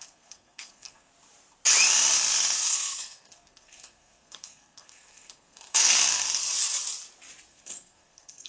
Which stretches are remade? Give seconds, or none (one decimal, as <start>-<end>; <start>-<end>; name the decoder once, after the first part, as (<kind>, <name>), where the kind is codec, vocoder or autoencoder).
0.0-1.1 (codec, SNAC); 2.6-6.2; 7.5-8.5

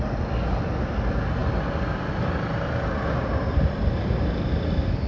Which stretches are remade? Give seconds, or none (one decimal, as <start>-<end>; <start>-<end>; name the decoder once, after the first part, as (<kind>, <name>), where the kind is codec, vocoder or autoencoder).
none

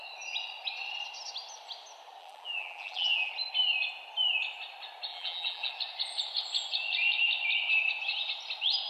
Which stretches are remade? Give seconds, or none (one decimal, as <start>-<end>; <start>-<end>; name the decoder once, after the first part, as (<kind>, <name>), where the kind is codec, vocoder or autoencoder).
2.2-3.3 (vocoder, BigVGAN v2); 5.1-5.7

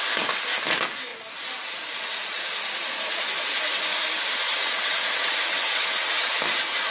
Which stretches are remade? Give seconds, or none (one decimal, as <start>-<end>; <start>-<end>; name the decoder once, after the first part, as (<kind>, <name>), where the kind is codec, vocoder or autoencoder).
4.6-6.3 (vocoder, WaveNeXt)

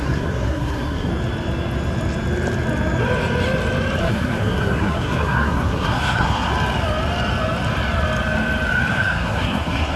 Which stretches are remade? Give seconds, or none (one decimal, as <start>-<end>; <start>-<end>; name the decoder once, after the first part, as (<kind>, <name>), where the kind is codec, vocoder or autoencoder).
0.0-1.1 (codec, SNAC); 4.0-6.5; 8.9-10.0